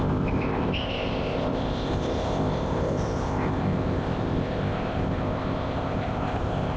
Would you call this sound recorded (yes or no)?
no